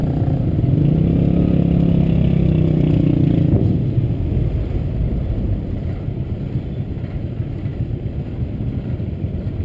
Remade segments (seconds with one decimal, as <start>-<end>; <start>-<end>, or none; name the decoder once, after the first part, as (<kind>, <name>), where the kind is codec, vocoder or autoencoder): 4.3-7.7 (vocoder, BigVGAN v2); 8.9-9.6